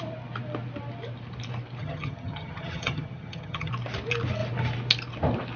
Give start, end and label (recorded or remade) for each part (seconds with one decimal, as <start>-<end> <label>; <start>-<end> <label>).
0.0-1.8 recorded; 1.8-3.7 remade; 3.7-5.6 recorded